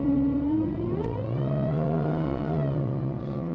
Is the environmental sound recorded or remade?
remade